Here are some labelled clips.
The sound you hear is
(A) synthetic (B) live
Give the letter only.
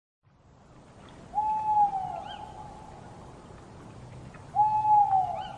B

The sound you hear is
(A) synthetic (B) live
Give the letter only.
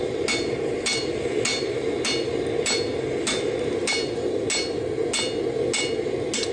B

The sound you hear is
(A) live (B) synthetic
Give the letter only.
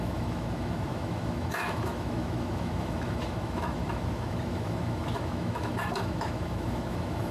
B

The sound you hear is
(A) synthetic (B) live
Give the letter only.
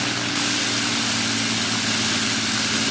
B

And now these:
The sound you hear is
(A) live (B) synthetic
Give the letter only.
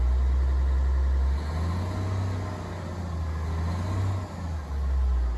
A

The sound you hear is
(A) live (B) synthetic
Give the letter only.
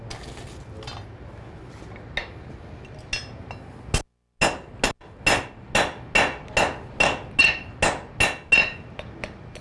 A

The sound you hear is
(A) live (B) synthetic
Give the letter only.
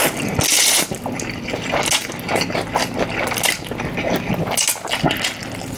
A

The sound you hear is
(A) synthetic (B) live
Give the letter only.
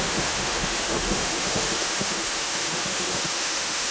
A